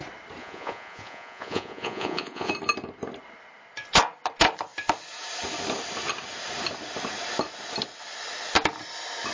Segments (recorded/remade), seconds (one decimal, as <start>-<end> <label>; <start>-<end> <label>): 0.0-0.4 recorded; 0.4-2.5 remade; 2.5-9.3 recorded